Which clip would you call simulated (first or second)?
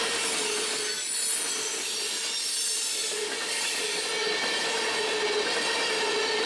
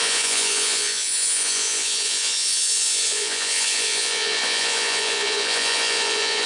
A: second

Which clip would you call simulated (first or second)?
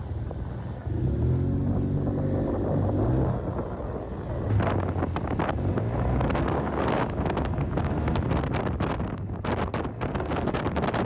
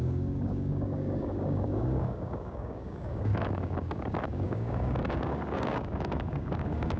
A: second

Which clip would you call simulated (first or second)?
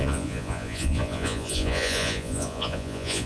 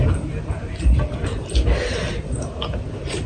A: first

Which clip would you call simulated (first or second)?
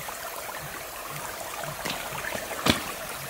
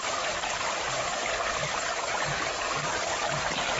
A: first